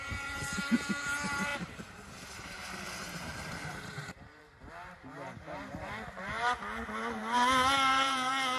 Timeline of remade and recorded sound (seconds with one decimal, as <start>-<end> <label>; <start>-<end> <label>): 0.0-8.6 remade